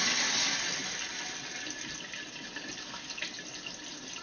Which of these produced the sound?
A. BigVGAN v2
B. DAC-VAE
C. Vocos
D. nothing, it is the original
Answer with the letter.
D